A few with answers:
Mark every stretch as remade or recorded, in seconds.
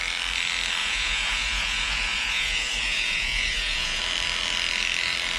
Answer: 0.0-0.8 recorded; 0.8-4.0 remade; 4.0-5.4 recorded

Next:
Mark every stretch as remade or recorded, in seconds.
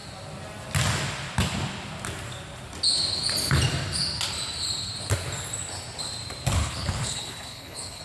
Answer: 0.0-6.6 recorded; 6.6-8.0 remade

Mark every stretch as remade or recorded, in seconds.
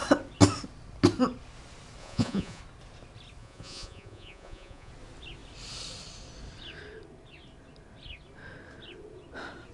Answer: 0.0-2.0 recorded; 2.0-2.6 remade; 2.6-3.4 recorded; 3.4-4.9 remade; 4.9-9.7 recorded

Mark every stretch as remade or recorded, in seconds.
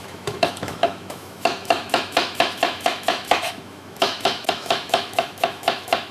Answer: 0.0-6.1 remade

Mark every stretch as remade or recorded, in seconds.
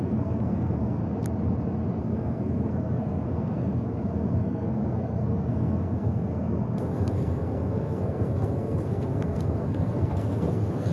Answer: 0.0-1.0 remade; 1.0-2.0 recorded; 2.0-10.9 remade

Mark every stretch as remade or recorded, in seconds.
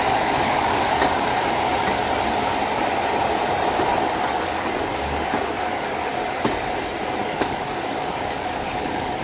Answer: 0.0-1.3 remade; 1.3-4.2 recorded; 4.2-6.1 remade; 6.1-7.2 recorded; 7.2-9.2 remade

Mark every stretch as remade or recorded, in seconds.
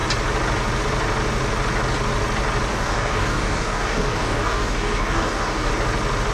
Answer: 0.0-2.7 recorded; 2.7-5.7 remade; 5.7-6.3 recorded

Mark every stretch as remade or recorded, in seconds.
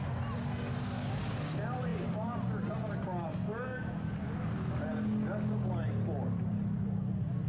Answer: 0.0-7.5 recorded